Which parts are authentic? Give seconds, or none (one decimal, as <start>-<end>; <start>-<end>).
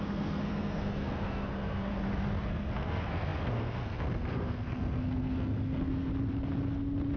1.9-2.5; 6.1-7.2